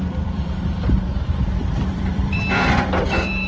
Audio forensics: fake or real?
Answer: fake